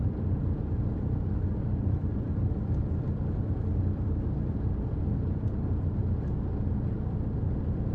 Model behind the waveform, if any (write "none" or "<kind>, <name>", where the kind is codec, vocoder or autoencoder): vocoder, BigVGAN v2